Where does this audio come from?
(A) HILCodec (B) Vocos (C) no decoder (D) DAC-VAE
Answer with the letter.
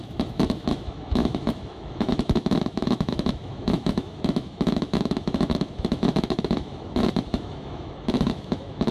D